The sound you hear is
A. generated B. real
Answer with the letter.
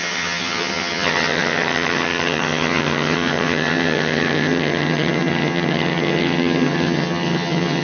A